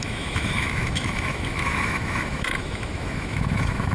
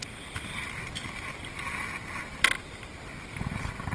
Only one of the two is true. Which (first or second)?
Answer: second